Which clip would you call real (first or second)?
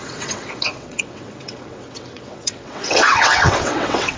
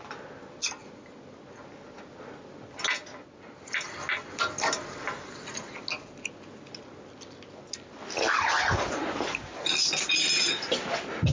second